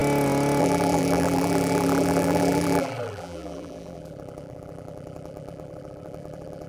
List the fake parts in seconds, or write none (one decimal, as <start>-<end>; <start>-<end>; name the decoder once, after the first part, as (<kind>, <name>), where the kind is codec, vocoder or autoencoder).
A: 0.6-6.7 (vocoder, BigVGAN v2)